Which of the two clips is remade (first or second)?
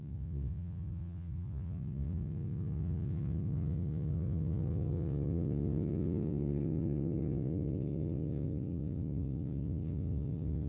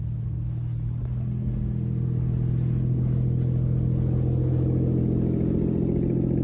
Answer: first